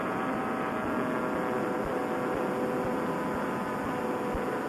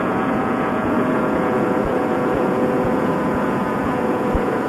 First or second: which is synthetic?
second